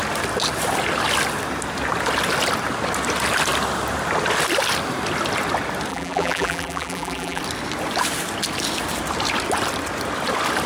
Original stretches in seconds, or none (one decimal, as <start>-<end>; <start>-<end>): 0.0-5.9; 7.4-10.7